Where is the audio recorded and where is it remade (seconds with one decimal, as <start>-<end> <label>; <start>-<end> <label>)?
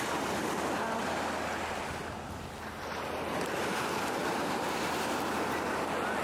0.0-6.2 recorded